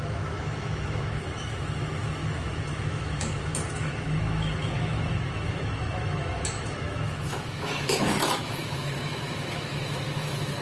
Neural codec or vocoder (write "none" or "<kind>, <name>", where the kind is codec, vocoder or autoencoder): autoencoder, DAC-VAE